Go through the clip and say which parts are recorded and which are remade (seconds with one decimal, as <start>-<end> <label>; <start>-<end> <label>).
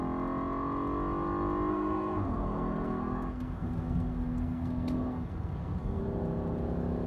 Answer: 0.0-1.7 recorded; 1.7-6.0 remade; 6.0-7.1 recorded